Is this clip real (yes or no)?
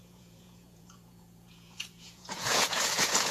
no